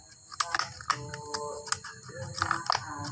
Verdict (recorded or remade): recorded